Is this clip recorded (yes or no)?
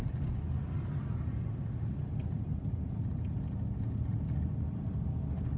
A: yes